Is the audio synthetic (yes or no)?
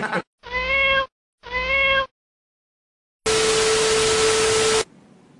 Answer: no